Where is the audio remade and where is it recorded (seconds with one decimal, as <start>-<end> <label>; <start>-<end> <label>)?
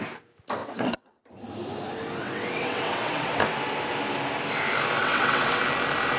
0.0-0.6 recorded; 0.6-1.2 remade; 1.2-2.2 recorded; 2.2-3.4 remade; 3.4-5.0 recorded; 5.0-5.6 remade; 5.6-6.2 recorded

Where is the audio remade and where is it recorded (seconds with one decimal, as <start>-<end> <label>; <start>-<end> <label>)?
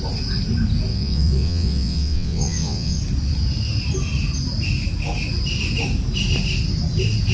0.0-0.9 recorded; 0.9-3.0 remade; 3.0-7.3 recorded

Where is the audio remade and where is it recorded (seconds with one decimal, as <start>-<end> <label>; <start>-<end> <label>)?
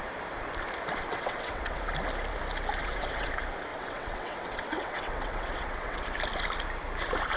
0.0-1.1 recorded; 1.1-1.9 remade; 1.9-2.8 recorded; 2.8-3.3 remade; 3.3-3.7 recorded; 3.7-6.0 remade; 6.0-7.4 recorded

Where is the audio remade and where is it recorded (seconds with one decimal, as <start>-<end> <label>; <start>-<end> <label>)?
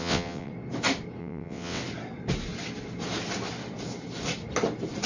0.0-0.5 remade; 0.5-1.2 recorded; 1.2-1.8 remade; 1.8-5.1 recorded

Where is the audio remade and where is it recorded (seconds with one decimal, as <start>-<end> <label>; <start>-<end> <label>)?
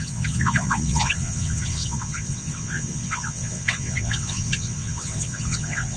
0.0-6.0 remade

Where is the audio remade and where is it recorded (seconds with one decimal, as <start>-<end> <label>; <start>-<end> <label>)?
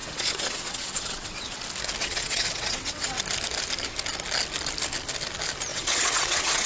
0.0-1.6 remade; 1.6-2.0 recorded; 2.0-3.2 remade; 3.2-5.7 recorded; 5.7-6.7 remade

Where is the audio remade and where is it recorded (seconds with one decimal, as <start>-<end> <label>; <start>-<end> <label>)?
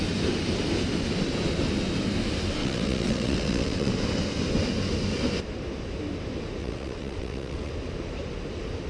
0.0-2.6 recorded; 2.6-3.9 remade; 3.9-6.6 recorded; 6.6-7.7 remade; 7.7-8.9 recorded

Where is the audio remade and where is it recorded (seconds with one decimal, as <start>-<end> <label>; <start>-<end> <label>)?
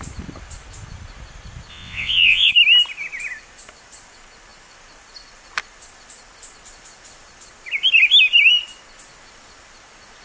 0.0-1.7 recorded; 1.7-2.5 remade; 2.5-10.2 recorded